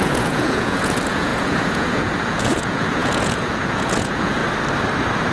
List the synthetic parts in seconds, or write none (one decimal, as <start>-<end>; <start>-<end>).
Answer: 0.0-4.4